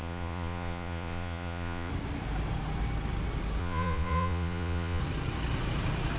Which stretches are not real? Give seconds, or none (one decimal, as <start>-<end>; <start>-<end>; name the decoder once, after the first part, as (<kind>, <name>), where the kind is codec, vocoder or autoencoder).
0.0-1.9 (vocoder, Vocos); 3.6-5.0